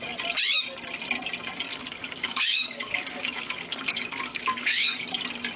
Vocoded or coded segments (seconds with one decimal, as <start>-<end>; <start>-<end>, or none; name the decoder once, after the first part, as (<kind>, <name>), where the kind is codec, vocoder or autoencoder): 1.7-5.0 (codec, DAC)

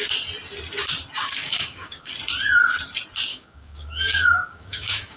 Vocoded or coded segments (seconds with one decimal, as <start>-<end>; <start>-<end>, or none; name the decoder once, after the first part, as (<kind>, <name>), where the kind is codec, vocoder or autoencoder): 1.4-2.1 (codec, DAC); 3.3-5.2

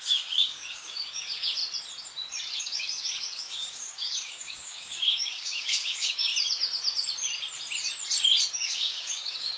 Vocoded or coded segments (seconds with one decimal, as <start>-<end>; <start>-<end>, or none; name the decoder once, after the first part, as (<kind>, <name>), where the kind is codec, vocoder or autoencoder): 0.0-1.6 (codec, DAC); 2.6-6.3; 8.5-9.6

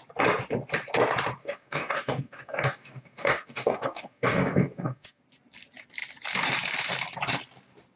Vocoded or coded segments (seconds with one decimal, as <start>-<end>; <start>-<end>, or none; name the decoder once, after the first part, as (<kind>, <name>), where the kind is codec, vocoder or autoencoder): 1.4-5.2 (codec, DAC)